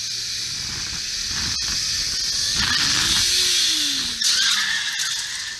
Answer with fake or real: real